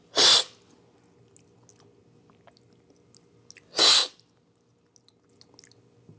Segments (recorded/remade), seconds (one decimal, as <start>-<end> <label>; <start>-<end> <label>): 0.0-6.2 recorded